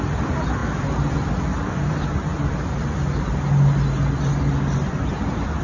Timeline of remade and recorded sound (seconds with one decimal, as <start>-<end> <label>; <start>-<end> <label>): 0.0-5.6 recorded